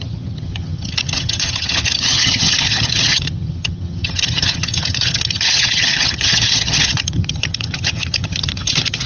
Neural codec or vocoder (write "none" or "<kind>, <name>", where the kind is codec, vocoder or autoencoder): vocoder, HiFi-GAN